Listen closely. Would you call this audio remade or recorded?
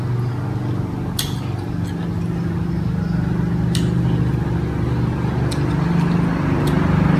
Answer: recorded